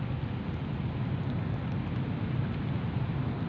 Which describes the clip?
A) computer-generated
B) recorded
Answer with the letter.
B